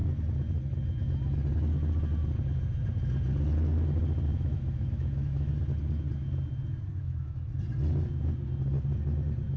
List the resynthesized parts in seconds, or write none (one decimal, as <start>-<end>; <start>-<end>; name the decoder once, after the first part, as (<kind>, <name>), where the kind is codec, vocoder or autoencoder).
4.3-5.5 (autoencoder, DAC-VAE); 6.9-7.5